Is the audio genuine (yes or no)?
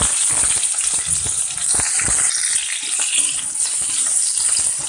yes